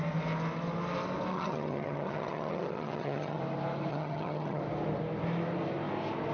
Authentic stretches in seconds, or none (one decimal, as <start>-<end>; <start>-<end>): 0.0-1.3; 3.4-3.9; 4.6-6.3